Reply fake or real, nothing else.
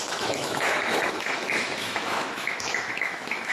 fake